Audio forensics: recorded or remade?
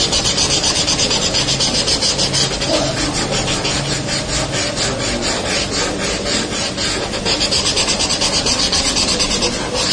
recorded